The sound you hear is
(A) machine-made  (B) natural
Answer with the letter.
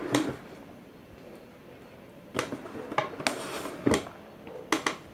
B